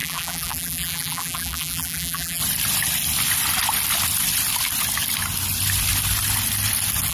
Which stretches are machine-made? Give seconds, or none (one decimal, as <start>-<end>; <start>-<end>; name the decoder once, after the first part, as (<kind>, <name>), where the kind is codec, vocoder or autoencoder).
0.0-2.4 (vocoder, BigVGAN v2)